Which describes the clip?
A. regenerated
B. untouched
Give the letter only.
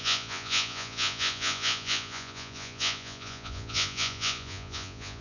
A